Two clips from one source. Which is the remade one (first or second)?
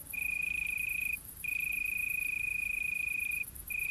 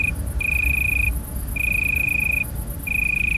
first